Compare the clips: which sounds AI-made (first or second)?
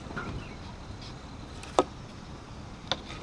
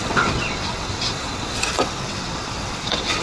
second